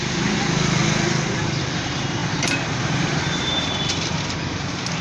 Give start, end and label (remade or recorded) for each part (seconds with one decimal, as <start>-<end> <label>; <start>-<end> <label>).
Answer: 0.0-0.8 remade; 0.8-1.6 recorded; 1.6-5.0 remade